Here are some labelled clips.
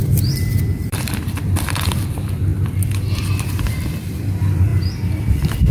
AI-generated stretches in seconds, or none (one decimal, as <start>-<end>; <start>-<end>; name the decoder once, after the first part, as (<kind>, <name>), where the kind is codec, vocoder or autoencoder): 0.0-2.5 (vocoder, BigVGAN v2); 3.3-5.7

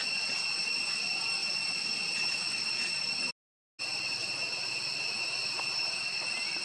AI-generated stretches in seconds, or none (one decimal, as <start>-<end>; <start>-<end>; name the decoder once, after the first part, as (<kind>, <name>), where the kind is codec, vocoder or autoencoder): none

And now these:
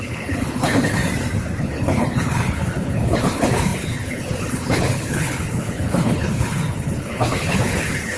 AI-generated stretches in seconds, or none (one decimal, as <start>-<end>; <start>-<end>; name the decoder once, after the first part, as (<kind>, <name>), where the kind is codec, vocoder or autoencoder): 0.0-1.0 (codec, HILCodec); 1.6-8.2

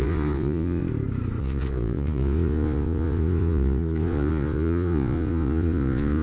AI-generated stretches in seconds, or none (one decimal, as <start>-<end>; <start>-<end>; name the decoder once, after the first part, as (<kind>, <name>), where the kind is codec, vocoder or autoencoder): 0.0-0.8 (vocoder, Vocos); 1.4-6.2

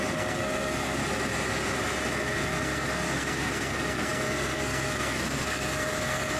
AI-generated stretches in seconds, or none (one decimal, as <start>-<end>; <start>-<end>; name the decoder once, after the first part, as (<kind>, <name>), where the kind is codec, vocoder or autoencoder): 0.0-1.0 (codec, SNAC); 2.1-6.4